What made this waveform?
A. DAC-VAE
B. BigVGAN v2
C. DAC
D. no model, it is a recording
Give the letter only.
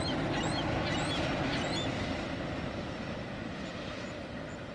D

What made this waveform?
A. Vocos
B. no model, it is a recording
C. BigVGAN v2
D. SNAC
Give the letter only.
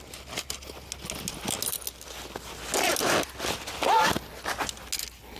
B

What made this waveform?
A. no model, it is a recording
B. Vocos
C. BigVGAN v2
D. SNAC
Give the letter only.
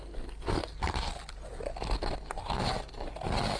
A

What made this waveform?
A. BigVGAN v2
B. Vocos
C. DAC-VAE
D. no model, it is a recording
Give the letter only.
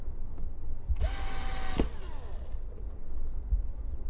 D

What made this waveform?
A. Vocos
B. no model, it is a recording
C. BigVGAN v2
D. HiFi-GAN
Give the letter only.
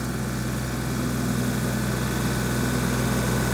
B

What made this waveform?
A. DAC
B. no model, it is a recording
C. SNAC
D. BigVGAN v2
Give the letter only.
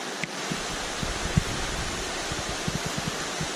B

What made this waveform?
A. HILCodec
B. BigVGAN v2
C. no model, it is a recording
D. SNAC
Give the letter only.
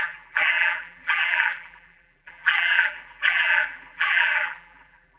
B